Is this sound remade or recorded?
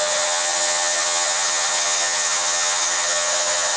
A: remade